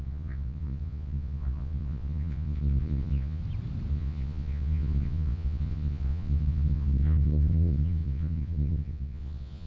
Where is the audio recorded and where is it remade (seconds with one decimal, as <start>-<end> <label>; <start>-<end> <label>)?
0.0-3.4 remade; 3.4-3.9 recorded; 3.9-9.7 remade